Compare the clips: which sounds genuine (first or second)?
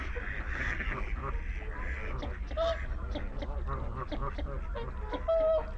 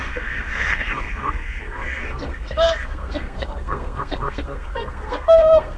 first